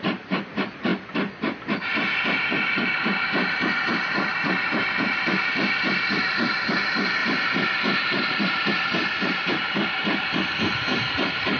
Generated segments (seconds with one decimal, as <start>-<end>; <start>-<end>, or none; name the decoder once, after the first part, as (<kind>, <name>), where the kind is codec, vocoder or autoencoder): 0.0-0.9 (vocoder, BigVGAN v2); 2.4-11.6